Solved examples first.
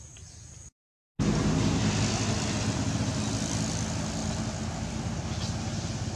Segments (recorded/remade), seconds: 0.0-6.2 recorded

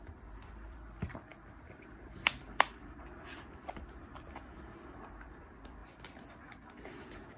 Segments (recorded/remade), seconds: 0.0-1.3 remade; 1.3-1.9 recorded; 1.9-5.8 remade; 5.8-7.0 recorded; 7.0-7.4 remade